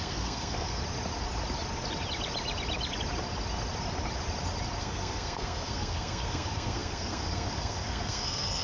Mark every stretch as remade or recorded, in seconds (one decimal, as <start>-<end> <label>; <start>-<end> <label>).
0.0-0.8 remade; 0.8-4.8 recorded; 4.8-8.6 remade